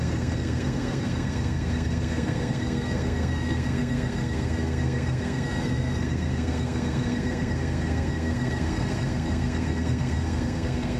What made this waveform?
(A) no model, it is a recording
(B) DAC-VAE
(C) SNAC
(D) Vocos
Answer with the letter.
C